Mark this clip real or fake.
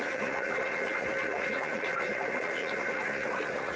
fake